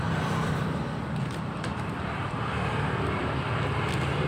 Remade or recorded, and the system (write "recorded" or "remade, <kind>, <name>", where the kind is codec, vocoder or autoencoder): remade, vocoder, BigVGAN v2